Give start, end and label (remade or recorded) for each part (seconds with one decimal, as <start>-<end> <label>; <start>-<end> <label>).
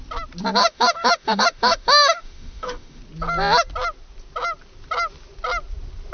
0.0-0.6 recorded; 0.6-3.0 remade; 3.0-6.1 recorded